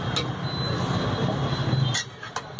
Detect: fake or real real